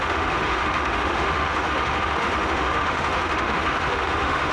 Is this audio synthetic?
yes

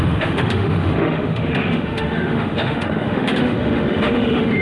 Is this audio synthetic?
yes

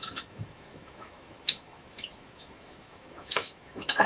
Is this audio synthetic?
yes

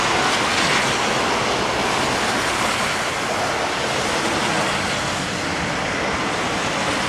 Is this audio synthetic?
no